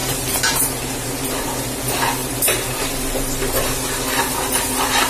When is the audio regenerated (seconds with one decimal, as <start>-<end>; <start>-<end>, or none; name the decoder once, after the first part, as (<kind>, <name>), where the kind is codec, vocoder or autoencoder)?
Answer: 0.0-0.9 (vocoder, BigVGAN v2); 2.2-3.4